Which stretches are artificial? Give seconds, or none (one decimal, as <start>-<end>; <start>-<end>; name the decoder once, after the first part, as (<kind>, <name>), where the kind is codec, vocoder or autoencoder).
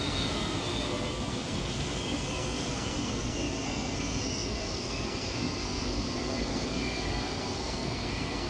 0.0-8.5 (codec, SNAC)